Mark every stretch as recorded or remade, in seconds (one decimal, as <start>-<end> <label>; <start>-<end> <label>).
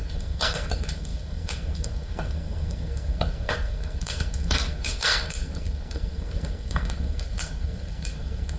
0.0-8.6 remade